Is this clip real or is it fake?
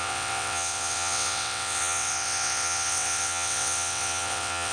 fake